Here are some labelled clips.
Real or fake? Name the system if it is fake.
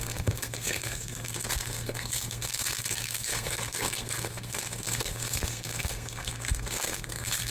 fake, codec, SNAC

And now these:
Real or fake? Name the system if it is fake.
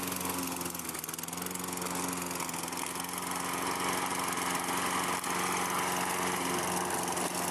real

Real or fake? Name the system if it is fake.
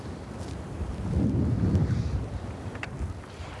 real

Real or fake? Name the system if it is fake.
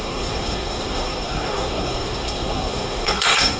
fake, codec, SNAC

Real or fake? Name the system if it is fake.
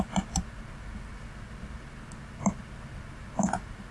real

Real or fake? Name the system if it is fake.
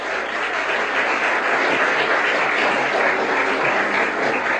real